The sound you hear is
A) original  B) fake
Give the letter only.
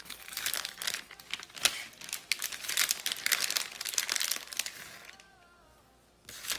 A